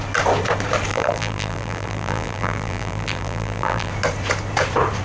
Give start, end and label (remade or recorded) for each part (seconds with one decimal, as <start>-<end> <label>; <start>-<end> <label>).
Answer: 0.0-0.9 recorded; 0.9-3.9 remade; 3.9-5.0 recorded